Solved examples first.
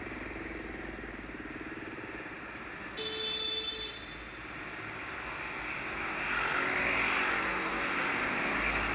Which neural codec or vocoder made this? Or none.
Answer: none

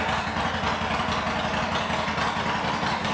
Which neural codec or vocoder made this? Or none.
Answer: none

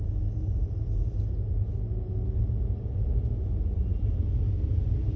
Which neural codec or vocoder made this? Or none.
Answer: none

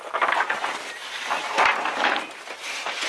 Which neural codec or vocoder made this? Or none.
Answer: none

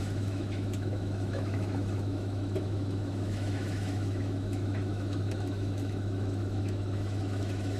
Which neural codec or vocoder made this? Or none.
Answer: autoencoder, DAC-VAE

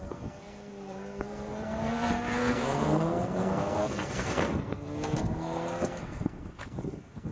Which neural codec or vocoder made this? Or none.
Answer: codec, SNAC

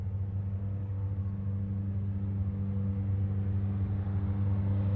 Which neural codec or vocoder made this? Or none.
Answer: none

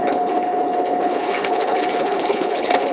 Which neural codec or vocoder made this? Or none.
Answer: codec, HILCodec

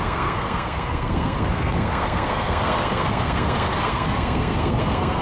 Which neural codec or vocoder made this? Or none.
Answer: codec, SNAC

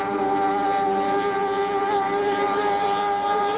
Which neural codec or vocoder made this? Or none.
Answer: none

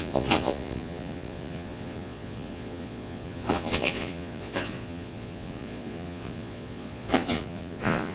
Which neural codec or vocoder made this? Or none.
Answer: vocoder, Vocos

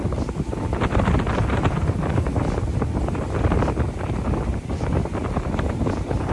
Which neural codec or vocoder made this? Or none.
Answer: none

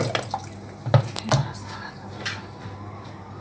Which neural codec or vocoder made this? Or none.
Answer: none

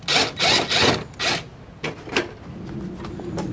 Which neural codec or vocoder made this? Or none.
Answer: none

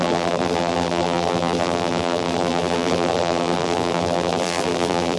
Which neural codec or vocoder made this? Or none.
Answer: vocoder, BigVGAN v2